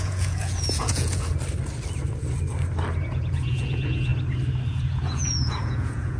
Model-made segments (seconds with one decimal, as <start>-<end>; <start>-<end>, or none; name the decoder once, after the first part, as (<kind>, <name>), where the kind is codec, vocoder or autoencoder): 0.0-1.3 (vocoder, Vocos); 3.1-4.1; 4.7-6.2